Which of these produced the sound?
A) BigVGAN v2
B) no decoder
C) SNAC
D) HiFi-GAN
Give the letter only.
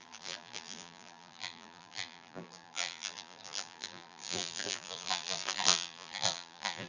A